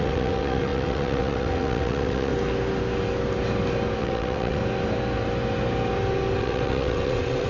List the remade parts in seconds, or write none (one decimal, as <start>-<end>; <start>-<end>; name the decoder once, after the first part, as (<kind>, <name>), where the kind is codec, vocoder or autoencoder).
0.0-2.3 (vocoder, WaveNeXt); 4.0-4.6; 6.4-7.5